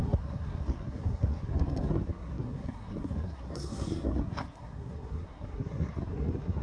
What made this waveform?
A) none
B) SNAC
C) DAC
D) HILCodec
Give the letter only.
B